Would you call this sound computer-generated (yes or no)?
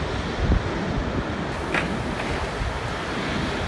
no